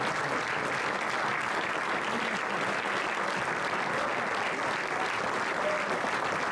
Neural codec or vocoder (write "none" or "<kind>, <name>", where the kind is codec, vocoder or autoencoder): none